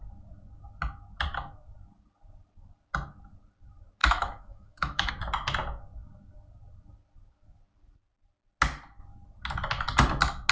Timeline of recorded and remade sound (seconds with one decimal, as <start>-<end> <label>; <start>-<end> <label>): 0.0-4.0 recorded; 4.0-5.1 remade; 5.1-10.5 recorded